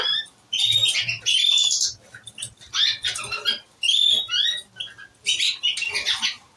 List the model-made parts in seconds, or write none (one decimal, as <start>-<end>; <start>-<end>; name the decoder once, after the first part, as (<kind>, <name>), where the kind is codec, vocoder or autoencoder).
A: 0.0-0.8 (vocoder, BigVGAN v2); 2.6-4.0